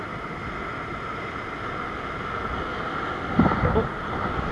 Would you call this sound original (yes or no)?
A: yes